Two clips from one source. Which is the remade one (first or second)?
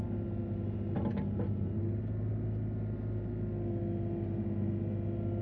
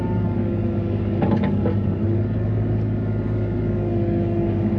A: second